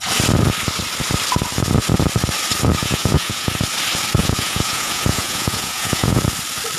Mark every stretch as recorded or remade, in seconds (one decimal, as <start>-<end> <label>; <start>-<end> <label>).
0.0-2.8 recorded; 2.8-3.5 remade; 3.5-4.2 recorded; 4.2-6.2 remade; 6.2-6.8 recorded